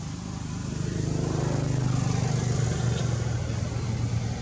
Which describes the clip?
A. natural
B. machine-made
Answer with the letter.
A